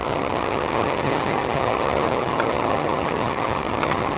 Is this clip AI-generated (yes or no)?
yes